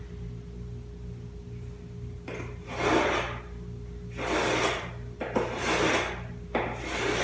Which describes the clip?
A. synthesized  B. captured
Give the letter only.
B